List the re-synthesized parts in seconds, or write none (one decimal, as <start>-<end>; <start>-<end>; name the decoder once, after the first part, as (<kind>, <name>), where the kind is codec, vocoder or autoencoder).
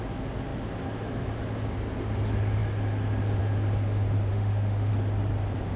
4.3-4.9 (autoencoder, DAC-VAE)